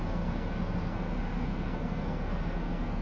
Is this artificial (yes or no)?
yes